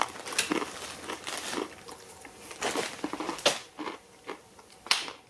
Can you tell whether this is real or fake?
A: real